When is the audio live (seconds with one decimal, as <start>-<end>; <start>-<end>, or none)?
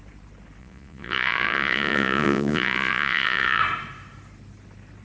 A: 0.0-0.6; 3.6-5.0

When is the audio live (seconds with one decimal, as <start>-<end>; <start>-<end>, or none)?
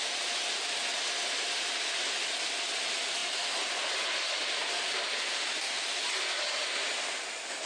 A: 0.0-7.7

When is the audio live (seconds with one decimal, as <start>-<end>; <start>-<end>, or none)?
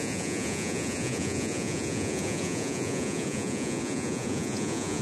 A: none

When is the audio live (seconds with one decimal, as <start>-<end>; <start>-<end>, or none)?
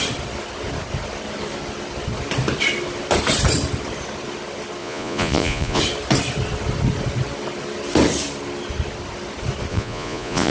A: 0.0-4.8; 5.8-9.7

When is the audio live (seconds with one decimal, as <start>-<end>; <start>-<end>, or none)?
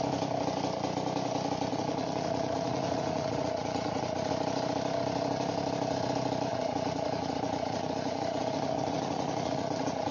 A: 0.0-1.7; 4.3-6.5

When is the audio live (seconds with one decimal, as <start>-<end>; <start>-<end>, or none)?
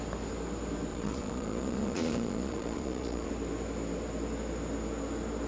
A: 0.0-0.9; 3.3-5.5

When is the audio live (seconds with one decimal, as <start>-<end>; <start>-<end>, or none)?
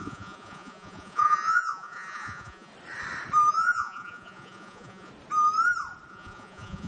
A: 2.7-3.5; 5.1-6.1